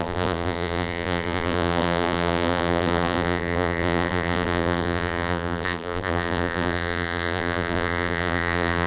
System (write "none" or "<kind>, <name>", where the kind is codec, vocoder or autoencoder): vocoder, BigVGAN v2